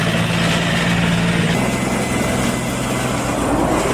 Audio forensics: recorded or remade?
recorded